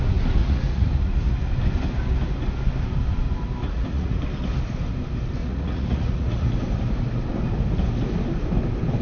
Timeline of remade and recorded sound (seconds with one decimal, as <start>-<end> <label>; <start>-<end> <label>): 0.0-0.4 recorded; 0.4-1.5 remade; 1.5-3.6 recorded; 3.6-4.2 remade; 4.2-5.4 recorded; 5.4-6.5 remade; 6.5-9.0 recorded